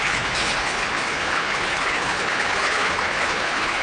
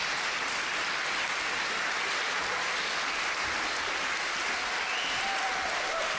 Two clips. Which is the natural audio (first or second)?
second